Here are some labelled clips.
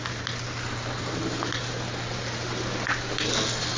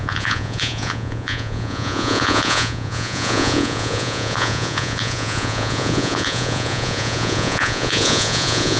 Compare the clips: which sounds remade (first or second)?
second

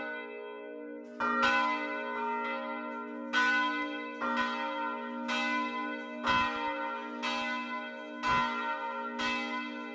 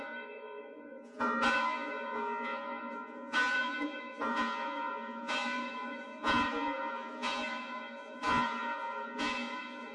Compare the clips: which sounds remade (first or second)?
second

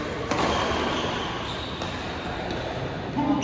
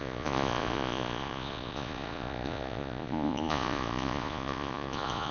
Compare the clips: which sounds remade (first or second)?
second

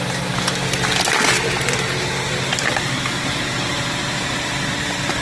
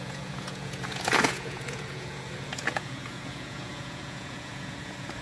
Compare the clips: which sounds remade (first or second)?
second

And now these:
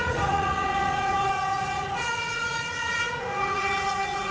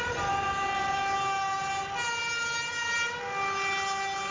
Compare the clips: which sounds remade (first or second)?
first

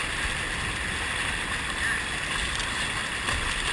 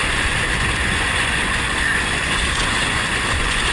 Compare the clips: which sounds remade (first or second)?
second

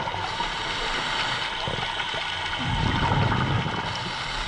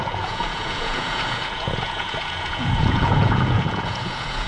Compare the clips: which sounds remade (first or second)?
second